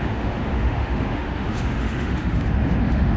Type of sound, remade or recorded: remade